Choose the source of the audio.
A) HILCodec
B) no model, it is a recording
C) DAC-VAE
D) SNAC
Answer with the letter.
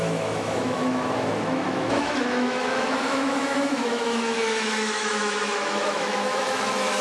C